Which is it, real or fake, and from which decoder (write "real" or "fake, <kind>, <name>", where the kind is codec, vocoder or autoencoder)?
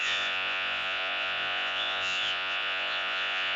fake, vocoder, Vocos